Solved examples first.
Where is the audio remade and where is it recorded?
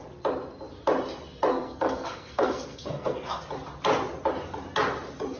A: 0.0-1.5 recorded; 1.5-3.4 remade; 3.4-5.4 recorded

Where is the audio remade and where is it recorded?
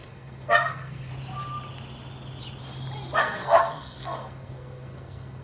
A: 0.0-1.1 remade; 1.1-3.2 recorded; 3.2-5.4 remade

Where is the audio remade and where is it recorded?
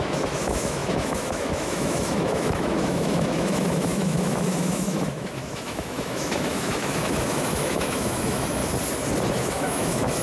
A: 0.0-8.6 remade; 8.6-9.3 recorded; 9.3-10.2 remade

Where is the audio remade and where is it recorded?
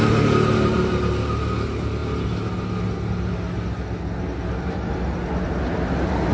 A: 0.0-6.3 recorded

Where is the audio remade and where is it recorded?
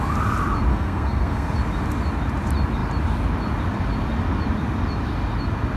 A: 0.0-0.7 recorded; 0.7-1.5 remade; 1.5-5.8 recorded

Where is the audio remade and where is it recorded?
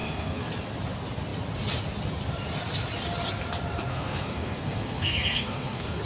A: 0.0-0.5 remade; 0.5-3.9 recorded; 3.9-6.0 remade